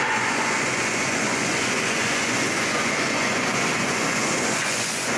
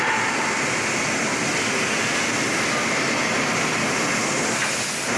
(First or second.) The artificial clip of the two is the first